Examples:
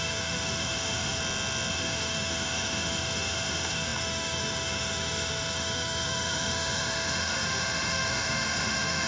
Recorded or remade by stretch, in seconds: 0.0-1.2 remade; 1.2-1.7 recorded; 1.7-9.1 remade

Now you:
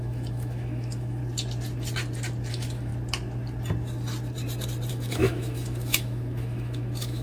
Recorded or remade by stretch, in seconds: 0.0-1.2 remade; 1.2-2.5 recorded; 2.5-2.9 remade; 2.9-4.9 recorded; 4.9-7.2 remade

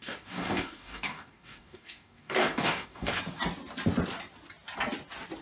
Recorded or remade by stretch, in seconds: 0.0-3.2 remade; 3.2-5.4 recorded

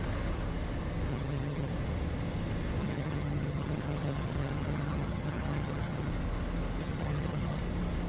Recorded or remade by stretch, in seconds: 0.0-1.1 recorded; 1.1-1.7 remade; 1.7-2.8 recorded; 2.8-6.1 remade; 6.1-6.8 recorded; 6.8-7.6 remade; 7.6-8.1 recorded

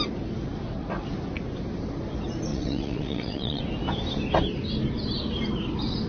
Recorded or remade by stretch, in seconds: 0.0-2.5 recorded; 2.5-3.6 remade; 3.6-6.1 recorded